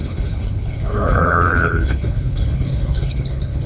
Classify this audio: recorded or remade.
remade